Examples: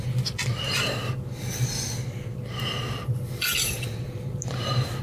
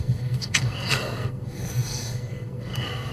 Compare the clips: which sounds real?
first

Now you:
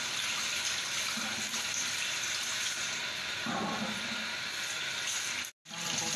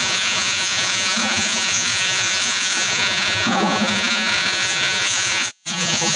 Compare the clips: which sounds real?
first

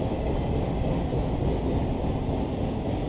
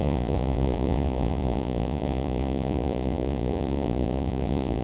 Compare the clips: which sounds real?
first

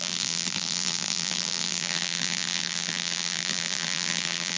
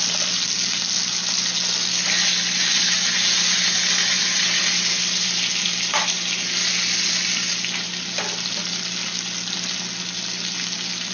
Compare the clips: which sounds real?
second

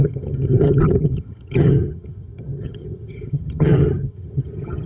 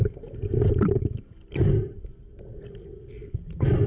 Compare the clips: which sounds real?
second